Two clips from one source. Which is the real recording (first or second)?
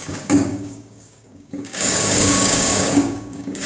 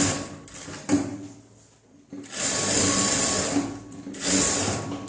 second